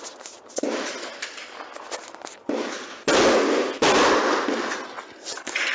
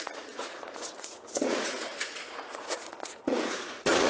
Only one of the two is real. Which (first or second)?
first